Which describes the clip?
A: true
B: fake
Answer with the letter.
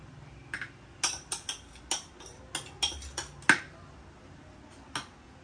A